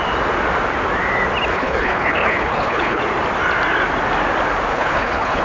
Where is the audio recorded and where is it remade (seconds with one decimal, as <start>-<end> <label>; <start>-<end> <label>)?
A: 0.0-1.5 recorded; 1.5-3.0 remade; 3.0-4.7 recorded; 4.7-5.4 remade